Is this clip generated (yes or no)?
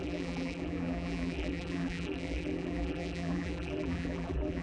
yes